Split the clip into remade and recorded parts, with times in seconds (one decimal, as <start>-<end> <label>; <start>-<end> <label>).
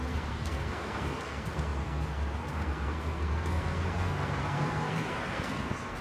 0.0-6.0 remade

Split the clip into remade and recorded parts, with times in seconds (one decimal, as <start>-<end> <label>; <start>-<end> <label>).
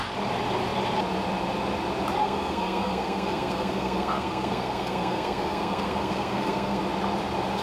0.0-2.2 recorded; 2.2-6.8 remade; 6.8-7.6 recorded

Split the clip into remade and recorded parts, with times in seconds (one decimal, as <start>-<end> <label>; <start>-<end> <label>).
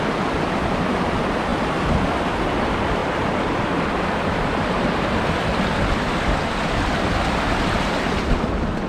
0.0-8.9 recorded